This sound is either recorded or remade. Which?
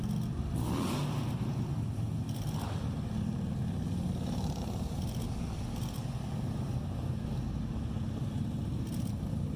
recorded